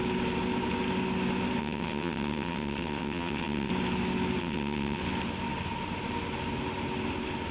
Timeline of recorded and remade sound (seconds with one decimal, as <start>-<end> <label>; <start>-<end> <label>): 0.0-1.6 recorded; 1.6-3.7 remade; 3.7-4.4 recorded; 4.4-5.0 remade; 5.0-7.5 recorded